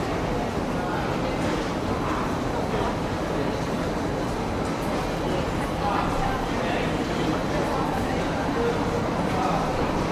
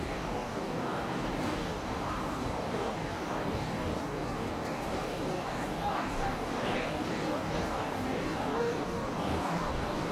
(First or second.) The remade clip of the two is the second